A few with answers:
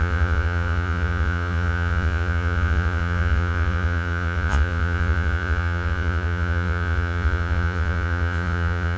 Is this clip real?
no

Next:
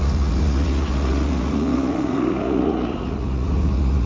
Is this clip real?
no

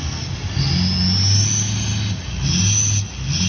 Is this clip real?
yes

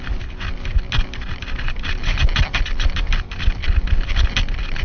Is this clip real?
yes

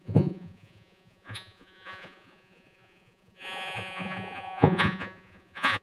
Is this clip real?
no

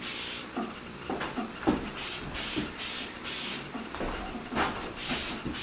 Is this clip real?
yes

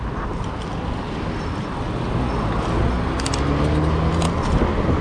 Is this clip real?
yes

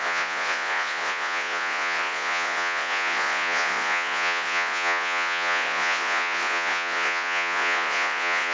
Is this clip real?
no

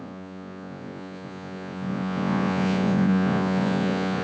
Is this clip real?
no